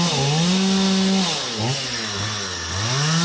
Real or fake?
real